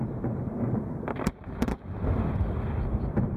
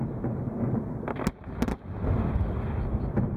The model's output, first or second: first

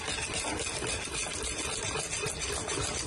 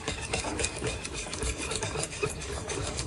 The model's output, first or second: second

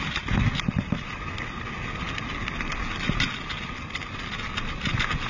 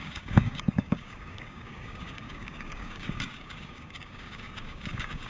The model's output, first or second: second